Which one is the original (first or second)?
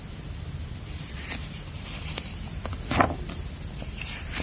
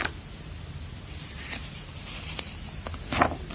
second